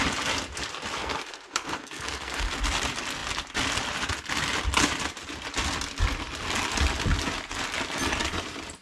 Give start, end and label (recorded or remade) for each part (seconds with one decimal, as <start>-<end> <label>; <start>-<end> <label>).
0.0-1.0 recorded; 1.0-2.5 remade; 2.5-8.8 recorded

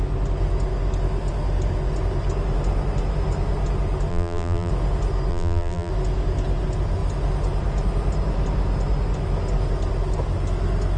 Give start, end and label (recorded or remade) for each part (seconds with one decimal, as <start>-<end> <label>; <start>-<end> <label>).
0.0-4.1 recorded; 4.1-4.7 remade; 4.7-5.3 recorded; 5.3-5.9 remade; 5.9-11.0 recorded

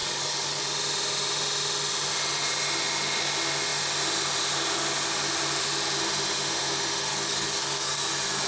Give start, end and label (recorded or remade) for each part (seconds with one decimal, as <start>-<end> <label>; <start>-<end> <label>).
0.0-0.6 remade; 0.6-7.1 recorded; 7.1-8.1 remade; 8.1-8.5 recorded